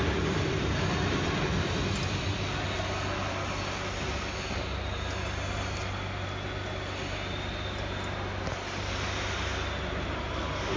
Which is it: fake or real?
real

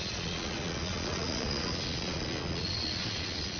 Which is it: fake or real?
fake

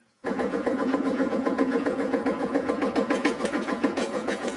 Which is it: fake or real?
fake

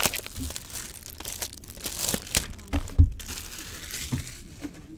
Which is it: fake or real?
real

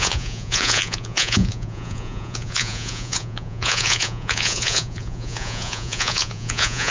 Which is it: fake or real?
fake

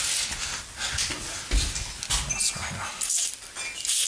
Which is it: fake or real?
real